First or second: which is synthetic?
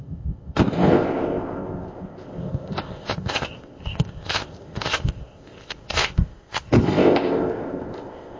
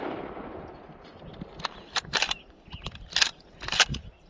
first